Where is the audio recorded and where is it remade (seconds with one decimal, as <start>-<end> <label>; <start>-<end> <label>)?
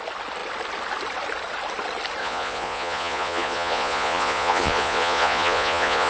0.0-2.2 recorded; 2.2-6.1 remade